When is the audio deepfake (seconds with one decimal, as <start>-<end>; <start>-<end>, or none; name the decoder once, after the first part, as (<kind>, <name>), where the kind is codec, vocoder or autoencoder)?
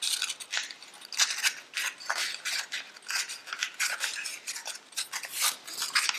none